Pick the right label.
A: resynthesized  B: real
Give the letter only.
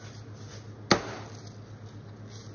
B